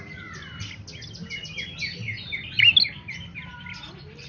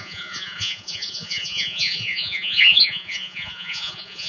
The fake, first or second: second